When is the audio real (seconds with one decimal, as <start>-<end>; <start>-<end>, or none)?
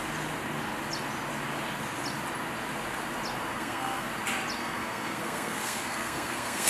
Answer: 0.0-3.5; 4.1-4.6